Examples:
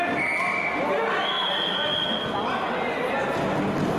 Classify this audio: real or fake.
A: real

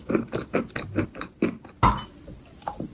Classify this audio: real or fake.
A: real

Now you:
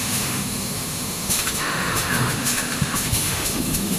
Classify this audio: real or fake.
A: fake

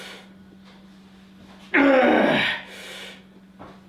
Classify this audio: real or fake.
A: real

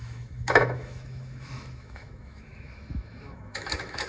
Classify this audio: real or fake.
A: fake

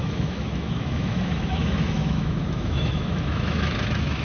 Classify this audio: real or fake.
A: fake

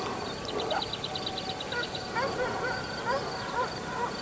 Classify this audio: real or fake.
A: real